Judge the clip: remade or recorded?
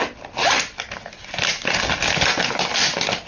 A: recorded